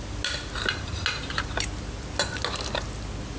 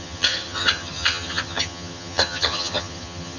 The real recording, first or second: first